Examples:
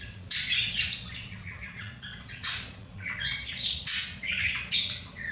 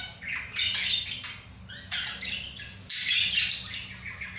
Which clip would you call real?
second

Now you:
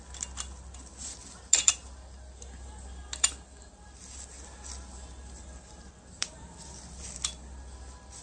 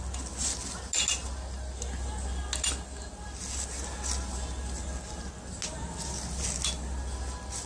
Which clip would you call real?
second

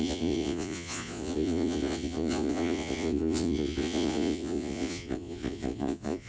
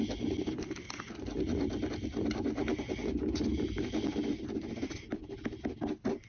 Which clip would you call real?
second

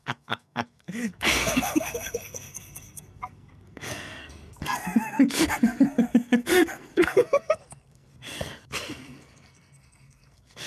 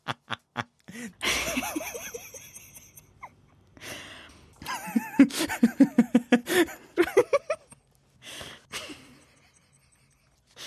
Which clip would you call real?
second